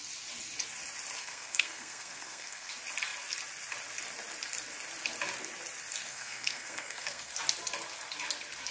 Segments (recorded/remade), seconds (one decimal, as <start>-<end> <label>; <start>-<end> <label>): 0.0-1.2 recorded; 1.2-2.7 remade; 2.7-6.1 recorded; 6.1-7.3 remade; 7.3-8.7 recorded